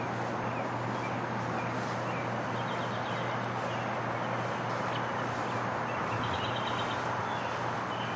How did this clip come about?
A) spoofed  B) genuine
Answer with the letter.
B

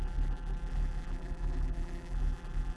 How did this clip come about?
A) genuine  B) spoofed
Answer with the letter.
B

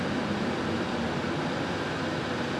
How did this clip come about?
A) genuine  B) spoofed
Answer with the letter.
A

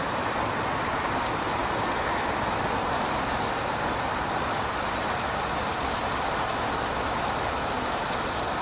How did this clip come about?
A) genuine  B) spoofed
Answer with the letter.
B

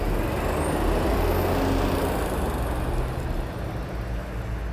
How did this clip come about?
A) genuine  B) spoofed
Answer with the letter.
A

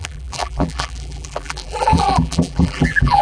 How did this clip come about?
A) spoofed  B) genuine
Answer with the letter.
A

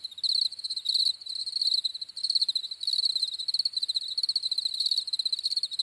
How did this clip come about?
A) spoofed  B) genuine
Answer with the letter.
B